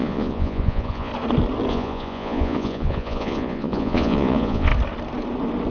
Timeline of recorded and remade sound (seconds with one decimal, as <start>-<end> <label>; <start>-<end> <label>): 0.0-1.1 remade; 1.1-1.7 recorded; 1.7-4.7 remade; 4.7-5.7 recorded